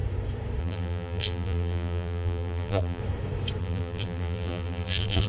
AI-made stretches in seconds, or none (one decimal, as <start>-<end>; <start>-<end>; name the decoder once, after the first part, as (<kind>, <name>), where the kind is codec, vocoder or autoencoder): 0.6-3.0 (vocoder, BigVGAN v2); 3.6-5.3